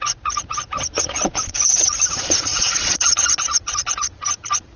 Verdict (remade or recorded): remade